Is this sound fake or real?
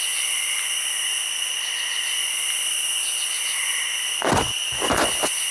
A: real